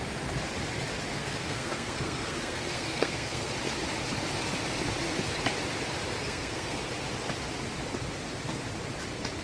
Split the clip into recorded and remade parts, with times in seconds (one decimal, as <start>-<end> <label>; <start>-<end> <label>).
0.0-1.1 recorded; 1.1-3.5 remade; 3.5-6.2 recorded; 6.2-6.8 remade; 6.8-9.4 recorded